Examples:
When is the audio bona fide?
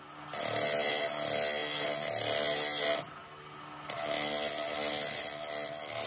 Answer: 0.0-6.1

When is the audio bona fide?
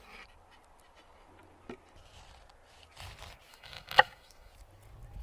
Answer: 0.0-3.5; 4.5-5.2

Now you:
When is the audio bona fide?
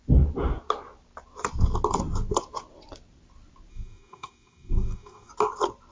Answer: 0.0-3.7; 5.3-5.9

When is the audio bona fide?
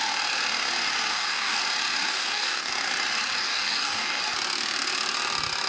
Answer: 0.0-1.1; 1.6-2.1; 2.7-3.4; 4.2-5.7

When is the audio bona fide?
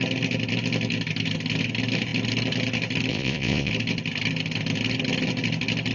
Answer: 0.0-3.1; 3.7-5.9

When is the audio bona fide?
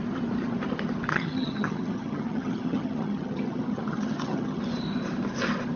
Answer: 0.0-1.1; 4.6-5.8